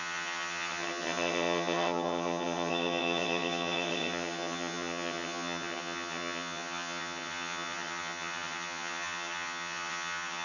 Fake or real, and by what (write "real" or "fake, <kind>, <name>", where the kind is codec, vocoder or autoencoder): fake, vocoder, HiFi-GAN